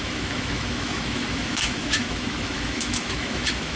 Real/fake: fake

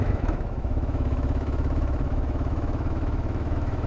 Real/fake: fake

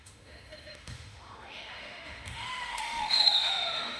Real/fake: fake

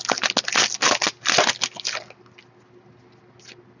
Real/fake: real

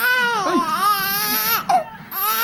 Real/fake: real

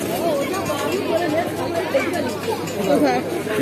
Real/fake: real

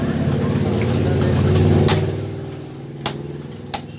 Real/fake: real